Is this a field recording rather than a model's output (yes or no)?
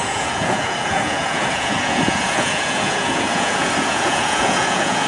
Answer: no